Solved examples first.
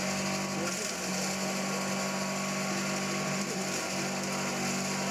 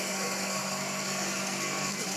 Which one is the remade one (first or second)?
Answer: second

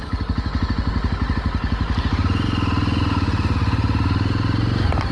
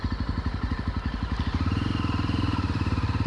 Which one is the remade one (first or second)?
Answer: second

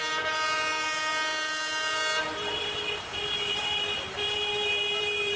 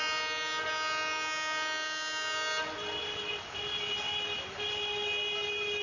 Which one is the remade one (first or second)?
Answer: first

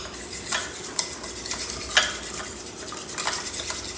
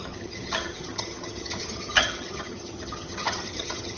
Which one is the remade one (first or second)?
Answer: second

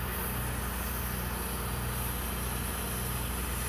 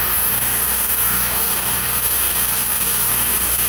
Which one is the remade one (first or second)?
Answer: second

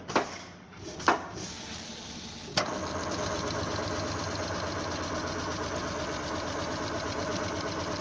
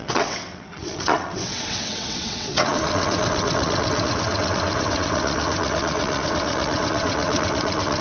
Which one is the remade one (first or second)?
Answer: second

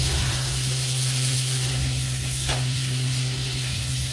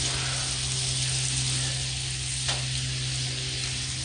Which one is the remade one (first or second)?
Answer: first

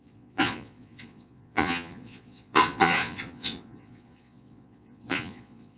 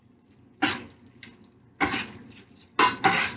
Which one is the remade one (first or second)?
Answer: first